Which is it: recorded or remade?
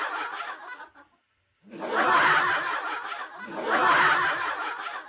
recorded